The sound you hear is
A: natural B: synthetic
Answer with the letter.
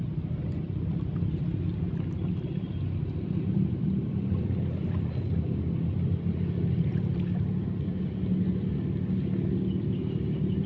A